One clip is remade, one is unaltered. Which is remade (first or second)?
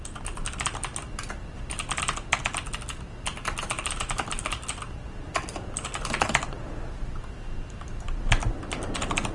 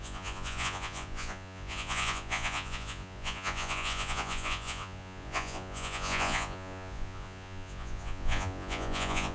second